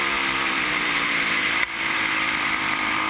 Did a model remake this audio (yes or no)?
yes